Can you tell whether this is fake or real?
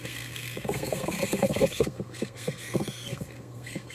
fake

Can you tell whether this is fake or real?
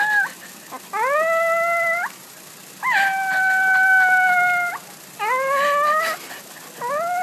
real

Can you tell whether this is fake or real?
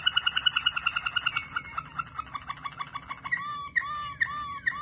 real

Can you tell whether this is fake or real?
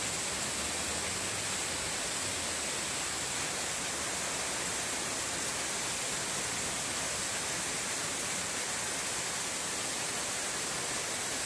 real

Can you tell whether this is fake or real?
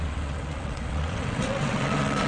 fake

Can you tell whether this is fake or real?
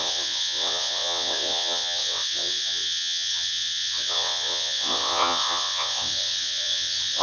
fake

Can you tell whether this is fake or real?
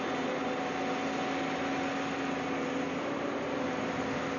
real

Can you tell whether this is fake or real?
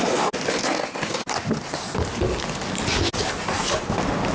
real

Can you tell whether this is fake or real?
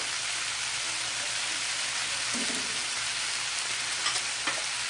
real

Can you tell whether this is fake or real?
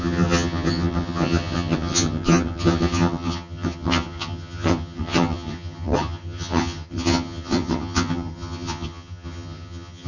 fake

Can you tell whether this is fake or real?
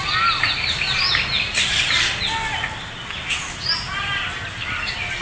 real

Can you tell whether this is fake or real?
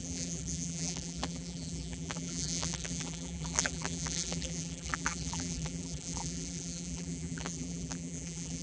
fake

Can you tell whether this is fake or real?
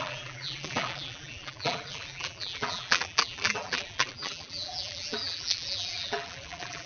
fake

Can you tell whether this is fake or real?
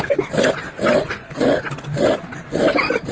real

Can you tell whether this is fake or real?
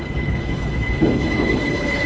fake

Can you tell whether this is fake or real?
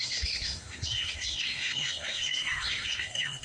fake